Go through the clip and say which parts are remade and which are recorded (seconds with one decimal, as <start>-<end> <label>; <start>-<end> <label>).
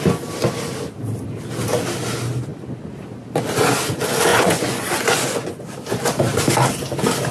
0.0-4.3 recorded; 4.3-5.6 remade; 5.6-7.3 recorded